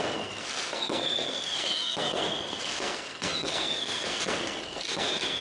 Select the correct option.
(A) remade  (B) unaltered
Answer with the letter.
A